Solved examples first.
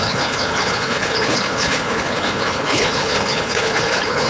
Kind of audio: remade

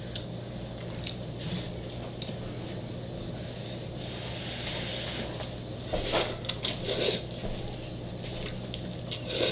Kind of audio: recorded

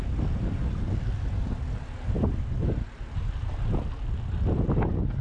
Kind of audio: recorded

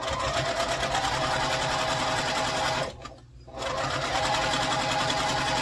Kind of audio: recorded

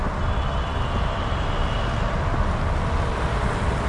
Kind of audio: recorded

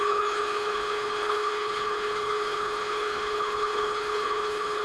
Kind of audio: remade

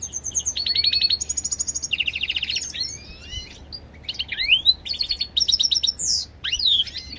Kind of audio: recorded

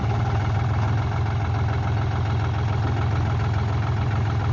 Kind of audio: recorded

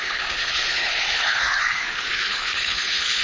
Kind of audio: remade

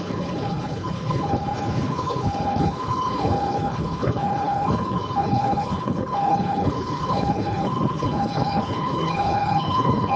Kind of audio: remade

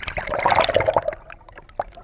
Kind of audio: recorded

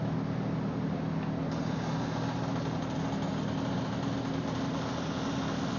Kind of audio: recorded